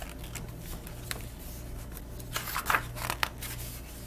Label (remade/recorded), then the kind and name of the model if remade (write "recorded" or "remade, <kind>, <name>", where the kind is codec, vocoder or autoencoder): recorded